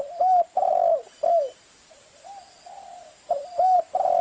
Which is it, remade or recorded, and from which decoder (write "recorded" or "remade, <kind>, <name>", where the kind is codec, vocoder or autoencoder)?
recorded